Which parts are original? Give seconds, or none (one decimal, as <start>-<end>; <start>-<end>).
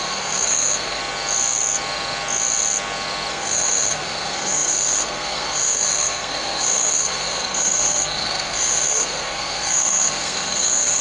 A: 1.0-3.3